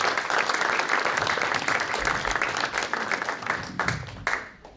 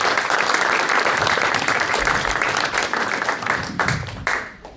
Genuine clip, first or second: first